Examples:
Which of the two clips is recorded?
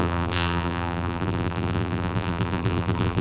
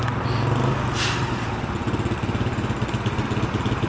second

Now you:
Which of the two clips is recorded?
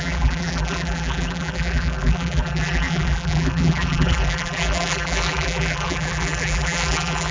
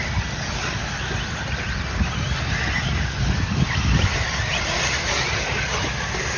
second